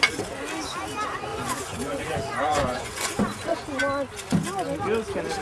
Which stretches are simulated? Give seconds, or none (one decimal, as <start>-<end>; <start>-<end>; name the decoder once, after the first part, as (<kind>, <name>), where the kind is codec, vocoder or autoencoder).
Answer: 1.3-3.8 (vocoder, Vocos)